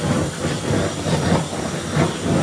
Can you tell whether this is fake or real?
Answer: real